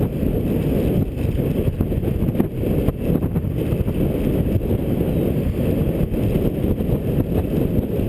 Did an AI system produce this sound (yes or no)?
no